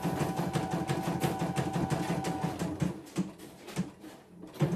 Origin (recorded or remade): recorded